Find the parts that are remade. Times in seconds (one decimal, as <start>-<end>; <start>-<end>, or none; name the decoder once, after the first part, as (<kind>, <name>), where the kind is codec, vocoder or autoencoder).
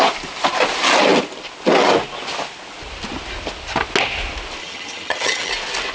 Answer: 4.6-5.5 (vocoder, HiFi-GAN)